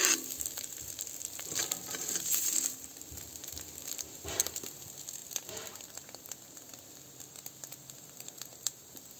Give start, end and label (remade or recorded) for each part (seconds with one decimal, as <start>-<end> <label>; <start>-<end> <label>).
0.0-2.9 remade; 2.9-4.4 recorded; 4.4-5.2 remade; 5.2-5.8 recorded; 5.8-6.7 remade; 6.7-8.5 recorded; 8.5-9.2 remade

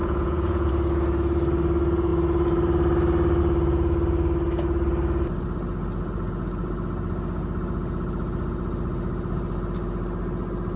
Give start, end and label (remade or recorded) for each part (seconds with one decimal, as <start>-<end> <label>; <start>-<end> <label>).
0.0-0.7 remade; 0.7-10.8 recorded

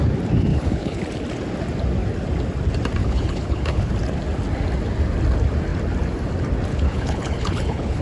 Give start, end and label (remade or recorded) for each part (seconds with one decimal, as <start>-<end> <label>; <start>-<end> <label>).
0.0-0.5 recorded; 0.5-1.0 remade; 1.0-3.0 recorded; 3.0-3.9 remade; 3.9-6.7 recorded; 6.7-8.0 remade

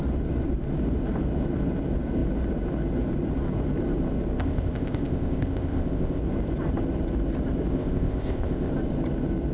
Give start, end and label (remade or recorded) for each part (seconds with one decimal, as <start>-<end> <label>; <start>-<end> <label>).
0.0-4.4 recorded; 4.4-6.2 remade; 6.2-7.7 recorded; 7.7-8.7 remade; 8.7-9.5 recorded

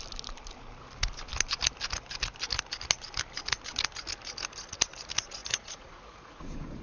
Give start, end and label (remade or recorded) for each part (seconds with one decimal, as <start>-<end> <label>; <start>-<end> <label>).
0.0-5.4 recorded; 5.4-6.8 remade